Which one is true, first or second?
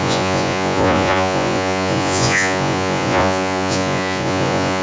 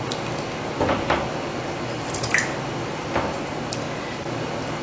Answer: second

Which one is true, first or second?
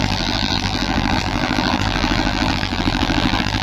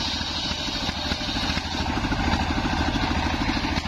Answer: second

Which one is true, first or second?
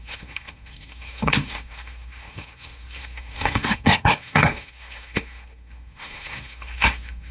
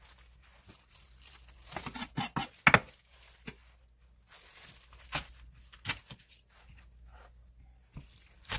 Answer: second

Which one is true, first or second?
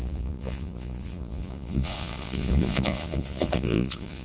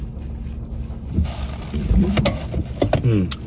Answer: second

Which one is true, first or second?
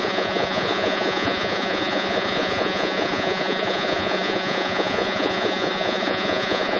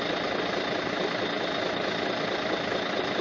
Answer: second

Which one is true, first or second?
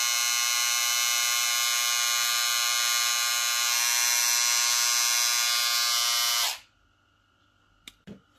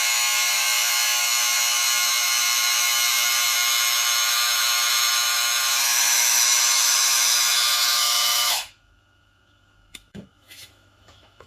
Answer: first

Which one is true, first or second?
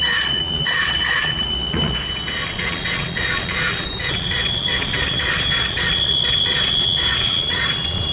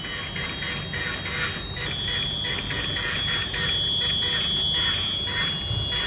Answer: second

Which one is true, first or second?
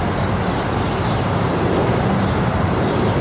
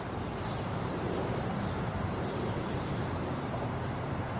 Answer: first